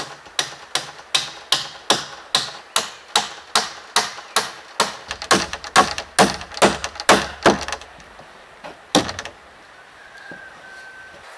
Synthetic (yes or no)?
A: no